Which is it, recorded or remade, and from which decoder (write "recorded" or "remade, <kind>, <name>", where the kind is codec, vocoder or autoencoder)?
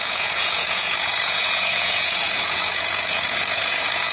remade, vocoder, Vocos